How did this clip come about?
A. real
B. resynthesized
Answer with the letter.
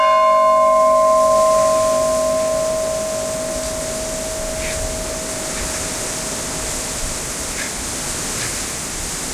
A